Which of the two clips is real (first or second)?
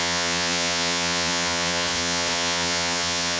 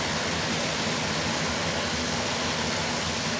second